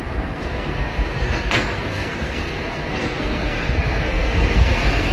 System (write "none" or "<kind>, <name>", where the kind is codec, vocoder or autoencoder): codec, SNAC